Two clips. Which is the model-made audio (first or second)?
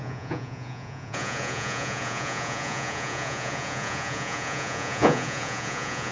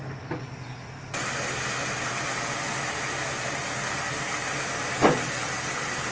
first